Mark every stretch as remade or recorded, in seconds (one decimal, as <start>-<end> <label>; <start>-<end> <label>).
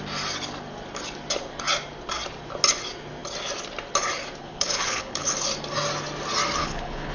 0.0-4.4 recorded; 4.4-5.4 remade; 5.4-6.6 recorded; 6.6-7.1 remade